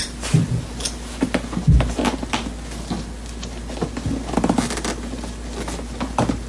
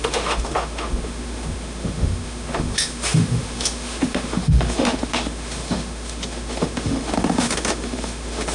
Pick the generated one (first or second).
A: second